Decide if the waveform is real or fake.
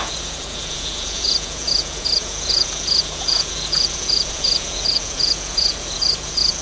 fake